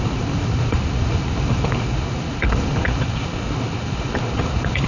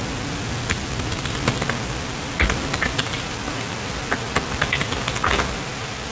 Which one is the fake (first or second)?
first